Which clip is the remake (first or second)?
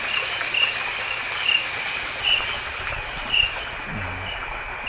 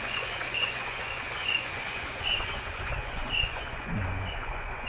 second